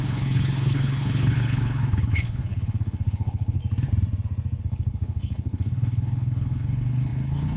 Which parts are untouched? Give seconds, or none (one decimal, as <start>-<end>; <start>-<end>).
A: 3.6-4.6